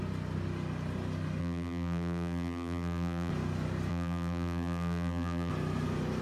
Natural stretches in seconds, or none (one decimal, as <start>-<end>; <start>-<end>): 0.0-1.4; 3.3-3.9; 5.5-6.2